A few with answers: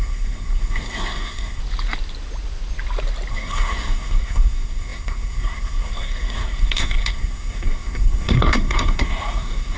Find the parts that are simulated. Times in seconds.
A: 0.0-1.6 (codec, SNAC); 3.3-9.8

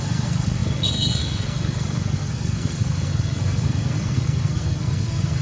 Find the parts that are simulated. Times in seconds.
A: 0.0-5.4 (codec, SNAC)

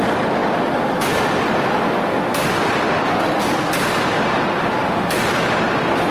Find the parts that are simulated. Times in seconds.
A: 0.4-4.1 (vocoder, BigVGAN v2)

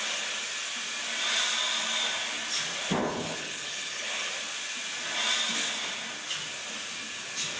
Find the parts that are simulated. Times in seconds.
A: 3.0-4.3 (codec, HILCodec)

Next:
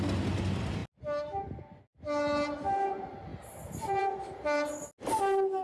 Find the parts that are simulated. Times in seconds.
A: none